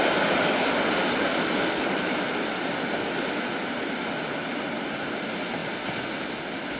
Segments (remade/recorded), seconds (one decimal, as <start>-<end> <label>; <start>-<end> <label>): 0.0-6.8 recorded